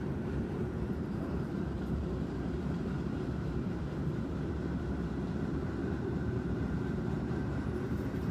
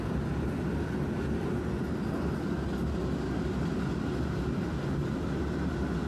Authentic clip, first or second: second